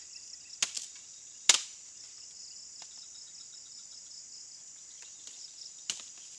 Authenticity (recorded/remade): recorded